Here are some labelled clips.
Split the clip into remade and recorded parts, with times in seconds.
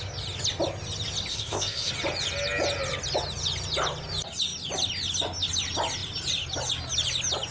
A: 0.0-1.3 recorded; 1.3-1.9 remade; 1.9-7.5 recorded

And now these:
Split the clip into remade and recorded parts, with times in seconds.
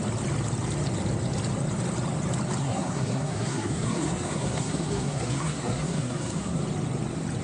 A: 0.0-2.6 recorded; 2.6-6.6 remade; 6.6-7.4 recorded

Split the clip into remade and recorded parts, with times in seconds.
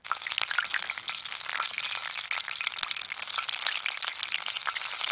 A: 0.0-5.1 recorded